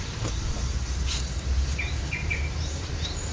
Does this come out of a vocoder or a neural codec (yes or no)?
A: yes